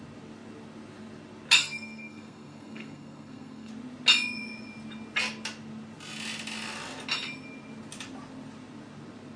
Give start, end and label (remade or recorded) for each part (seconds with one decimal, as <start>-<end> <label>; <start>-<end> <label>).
0.0-1.6 recorded; 1.6-3.7 remade; 3.7-9.4 recorded